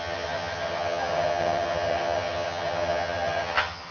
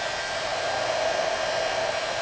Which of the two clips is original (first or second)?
second